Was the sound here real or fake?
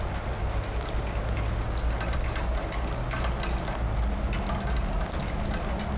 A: real